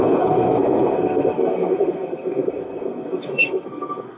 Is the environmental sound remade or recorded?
remade